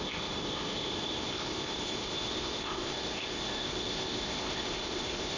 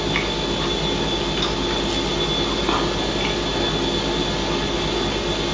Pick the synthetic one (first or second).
first